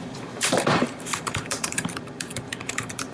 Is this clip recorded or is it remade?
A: remade